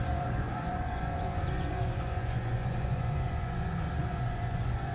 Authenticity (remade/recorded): remade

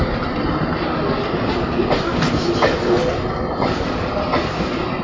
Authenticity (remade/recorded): recorded